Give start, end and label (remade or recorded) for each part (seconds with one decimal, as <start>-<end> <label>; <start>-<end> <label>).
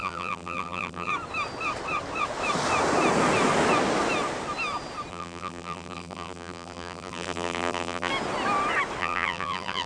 0.0-1.1 remade; 1.1-5.1 recorded; 5.1-8.1 remade; 8.1-9.0 recorded; 9.0-9.9 remade